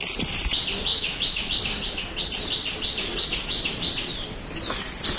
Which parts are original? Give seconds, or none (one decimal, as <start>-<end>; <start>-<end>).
0.0-0.9; 1.5-5.2